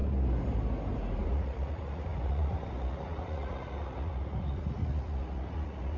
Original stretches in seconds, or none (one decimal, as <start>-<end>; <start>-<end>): 0.0-1.3